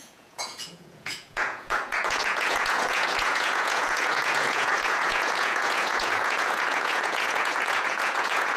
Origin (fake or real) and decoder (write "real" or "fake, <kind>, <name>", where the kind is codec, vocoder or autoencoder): fake, vocoder, Vocos